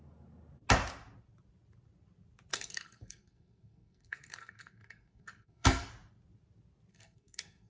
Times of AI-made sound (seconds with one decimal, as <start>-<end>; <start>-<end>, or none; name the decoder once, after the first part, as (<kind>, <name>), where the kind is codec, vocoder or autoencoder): 2.5-5.9 (codec, SNAC); 6.9-7.7